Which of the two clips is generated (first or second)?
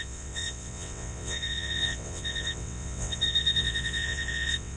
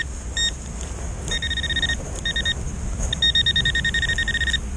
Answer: first